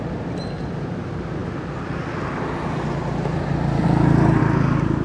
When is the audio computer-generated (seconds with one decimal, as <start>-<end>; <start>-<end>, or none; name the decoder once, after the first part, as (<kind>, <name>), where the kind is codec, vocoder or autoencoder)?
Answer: none